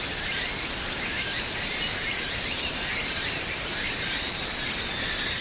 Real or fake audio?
fake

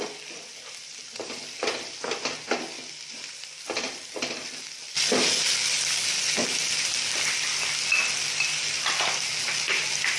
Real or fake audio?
fake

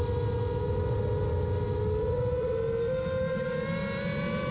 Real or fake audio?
real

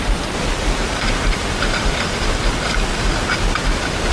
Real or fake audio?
fake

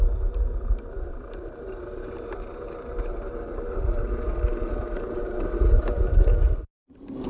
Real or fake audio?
fake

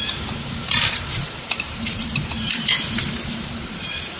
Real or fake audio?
fake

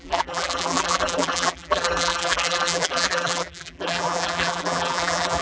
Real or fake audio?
fake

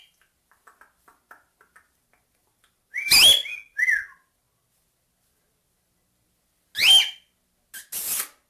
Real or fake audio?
real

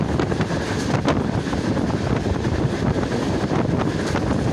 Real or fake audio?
fake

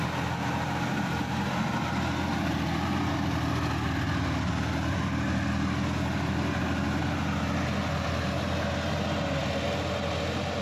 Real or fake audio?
real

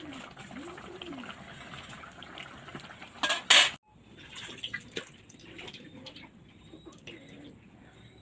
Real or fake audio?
real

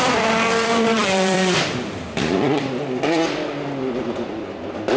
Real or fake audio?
fake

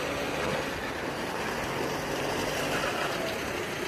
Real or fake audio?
real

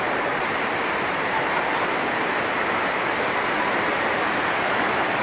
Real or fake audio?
fake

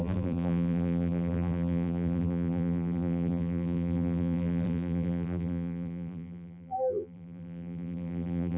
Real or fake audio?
fake